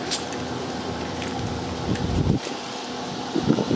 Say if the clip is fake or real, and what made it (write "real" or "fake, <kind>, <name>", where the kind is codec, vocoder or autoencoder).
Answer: fake, vocoder, BigVGAN v2